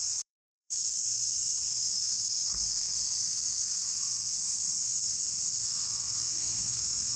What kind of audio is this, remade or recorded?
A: remade